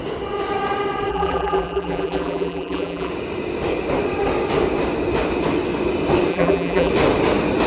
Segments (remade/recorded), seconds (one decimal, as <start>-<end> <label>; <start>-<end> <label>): 0.0-1.1 recorded; 1.1-3.1 remade; 3.1-6.3 recorded; 6.3-6.9 remade; 6.9-7.7 recorded